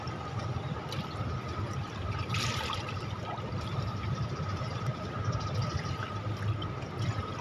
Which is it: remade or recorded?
remade